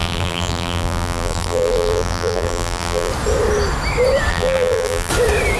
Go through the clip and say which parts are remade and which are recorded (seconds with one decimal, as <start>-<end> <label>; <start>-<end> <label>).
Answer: 0.0-3.1 remade; 3.1-4.3 recorded; 4.3-5.1 remade; 5.1-5.6 recorded